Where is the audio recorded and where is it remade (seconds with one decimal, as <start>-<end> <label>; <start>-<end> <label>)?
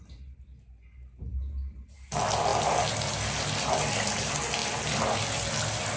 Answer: 0.0-6.0 recorded